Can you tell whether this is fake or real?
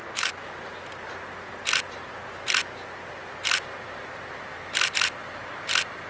real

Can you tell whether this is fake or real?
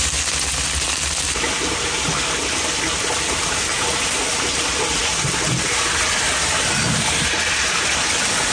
real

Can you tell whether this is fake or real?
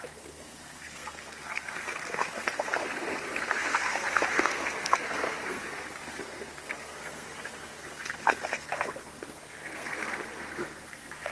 fake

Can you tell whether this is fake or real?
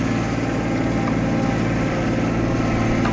real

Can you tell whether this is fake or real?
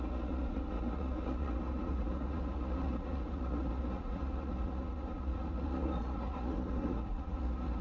fake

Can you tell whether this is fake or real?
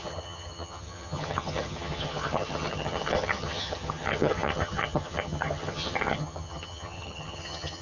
fake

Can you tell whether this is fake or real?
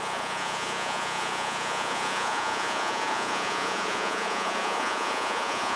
fake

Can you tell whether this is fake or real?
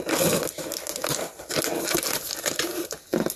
real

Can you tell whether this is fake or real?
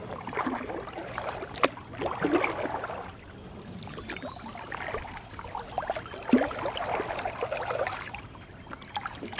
real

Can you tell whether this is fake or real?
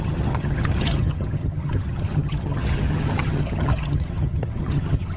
fake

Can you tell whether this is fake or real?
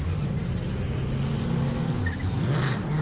real